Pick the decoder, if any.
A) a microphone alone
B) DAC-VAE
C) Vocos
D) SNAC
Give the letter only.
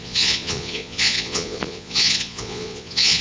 C